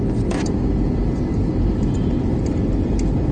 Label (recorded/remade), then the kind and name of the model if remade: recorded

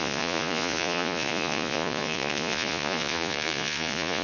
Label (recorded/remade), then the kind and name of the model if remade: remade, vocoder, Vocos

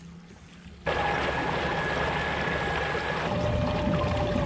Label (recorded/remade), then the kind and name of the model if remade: recorded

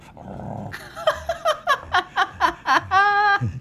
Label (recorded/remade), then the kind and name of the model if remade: recorded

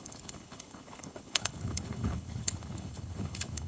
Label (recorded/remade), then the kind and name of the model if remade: remade, codec, HILCodec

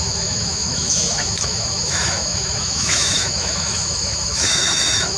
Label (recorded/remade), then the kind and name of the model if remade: remade, autoencoder, DAC-VAE